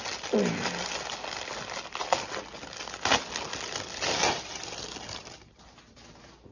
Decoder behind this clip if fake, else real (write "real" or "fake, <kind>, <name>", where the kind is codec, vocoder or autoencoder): real